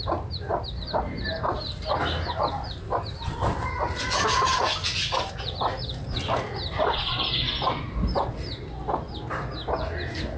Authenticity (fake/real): real